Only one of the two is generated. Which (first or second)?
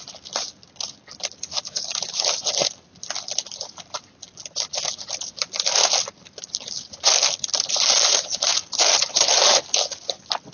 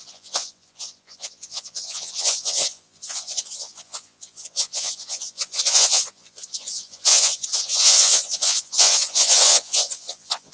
second